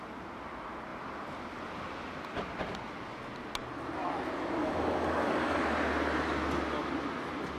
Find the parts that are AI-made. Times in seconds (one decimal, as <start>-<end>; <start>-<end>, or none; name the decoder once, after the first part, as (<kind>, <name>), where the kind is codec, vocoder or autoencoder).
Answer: 4.6-5.6 (codec, DAC)

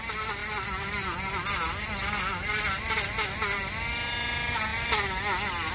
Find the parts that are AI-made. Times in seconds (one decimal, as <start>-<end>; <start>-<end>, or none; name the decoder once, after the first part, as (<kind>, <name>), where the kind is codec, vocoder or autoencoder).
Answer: none

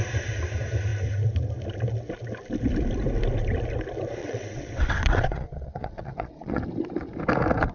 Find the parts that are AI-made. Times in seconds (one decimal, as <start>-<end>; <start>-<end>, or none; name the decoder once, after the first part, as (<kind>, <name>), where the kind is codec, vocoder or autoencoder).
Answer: 4.2-6.6 (vocoder, WaveNeXt)

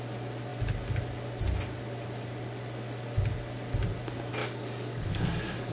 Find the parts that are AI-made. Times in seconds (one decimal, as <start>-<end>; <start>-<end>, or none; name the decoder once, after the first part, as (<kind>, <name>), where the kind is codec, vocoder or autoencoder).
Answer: 4.4-5.7 (codec, DAC)